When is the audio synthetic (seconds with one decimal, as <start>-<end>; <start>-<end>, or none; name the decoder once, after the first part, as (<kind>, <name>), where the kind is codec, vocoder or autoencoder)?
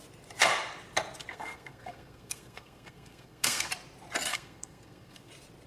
1.3-3.7 (codec, SNAC); 4.3-5.3